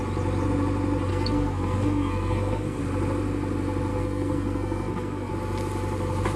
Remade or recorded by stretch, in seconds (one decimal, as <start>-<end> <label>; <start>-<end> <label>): 0.0-1.1 recorded; 1.1-2.8 remade; 2.8-3.9 recorded; 3.9-5.3 remade; 5.3-6.4 recorded